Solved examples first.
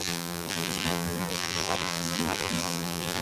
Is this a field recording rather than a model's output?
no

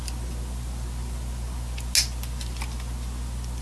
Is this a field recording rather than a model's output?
yes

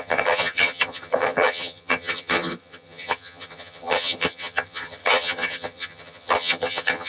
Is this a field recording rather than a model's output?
no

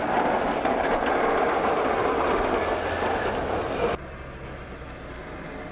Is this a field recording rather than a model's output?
yes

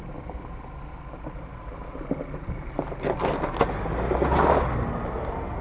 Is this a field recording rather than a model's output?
yes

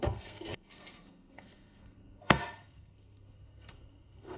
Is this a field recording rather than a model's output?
no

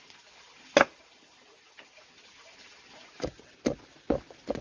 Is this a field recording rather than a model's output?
yes